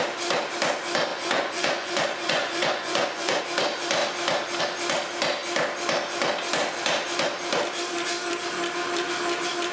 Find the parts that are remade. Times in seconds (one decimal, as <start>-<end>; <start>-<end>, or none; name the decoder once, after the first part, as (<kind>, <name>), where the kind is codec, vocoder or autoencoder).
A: 1.1-3.4 (vocoder, Vocos)